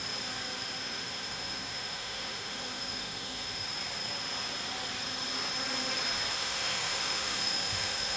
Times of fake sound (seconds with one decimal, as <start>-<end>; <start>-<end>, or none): 0.8-3.7; 6.3-8.2